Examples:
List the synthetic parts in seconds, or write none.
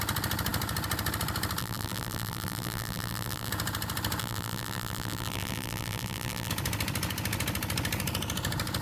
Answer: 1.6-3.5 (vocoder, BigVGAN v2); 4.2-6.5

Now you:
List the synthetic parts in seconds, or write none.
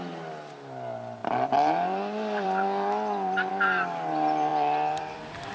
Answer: 1.2-3.5 (vocoder, BigVGAN v2); 4.5-5.5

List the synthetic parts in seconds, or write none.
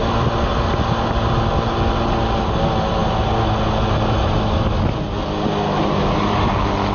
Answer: none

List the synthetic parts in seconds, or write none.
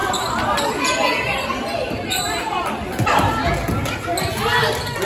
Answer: 1.3-3.4 (vocoder, BigVGAN v2)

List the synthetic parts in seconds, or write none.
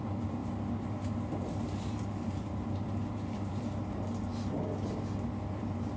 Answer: 0.0-4.3 (vocoder, BigVGAN v2); 5.5-6.0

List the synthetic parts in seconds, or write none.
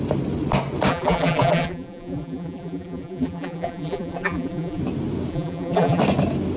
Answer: 0.9-4.8 (vocoder, BigVGAN v2); 5.3-6.0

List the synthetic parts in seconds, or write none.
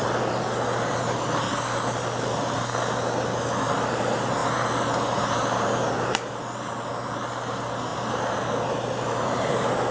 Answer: 4.4-5.9 (vocoder, BigVGAN v2); 7.9-9.9